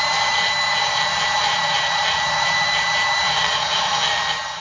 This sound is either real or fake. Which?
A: fake